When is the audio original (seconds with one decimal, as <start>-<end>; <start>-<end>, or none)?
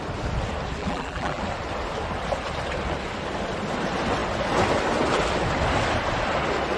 0.0-0.8; 1.4-6.8